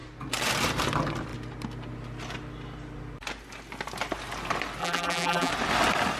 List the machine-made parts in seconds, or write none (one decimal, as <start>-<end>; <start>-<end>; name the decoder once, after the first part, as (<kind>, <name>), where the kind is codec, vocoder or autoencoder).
4.8-5.5 (vocoder, BigVGAN v2)